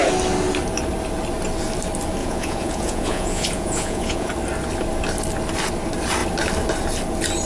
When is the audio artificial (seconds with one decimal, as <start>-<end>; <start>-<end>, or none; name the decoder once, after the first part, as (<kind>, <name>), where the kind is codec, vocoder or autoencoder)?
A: 2.2-4.3 (vocoder, Vocos)